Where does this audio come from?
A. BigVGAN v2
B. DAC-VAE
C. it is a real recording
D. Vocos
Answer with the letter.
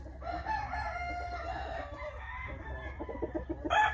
C